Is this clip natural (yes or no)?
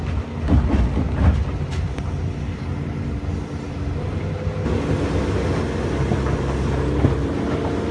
yes